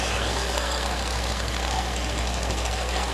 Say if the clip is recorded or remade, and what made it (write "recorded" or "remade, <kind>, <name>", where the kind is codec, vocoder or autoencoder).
remade, codec, SNAC